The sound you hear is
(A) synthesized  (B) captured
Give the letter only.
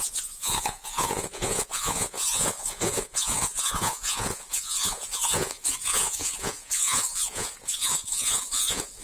A